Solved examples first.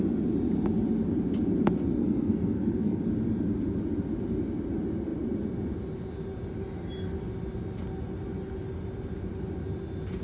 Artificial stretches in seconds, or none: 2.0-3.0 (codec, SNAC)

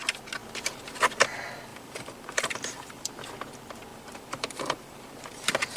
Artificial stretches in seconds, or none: 1.7-3.1 (vocoder, BigVGAN v2); 3.9-5.2